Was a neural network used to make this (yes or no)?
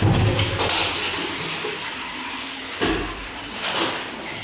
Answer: no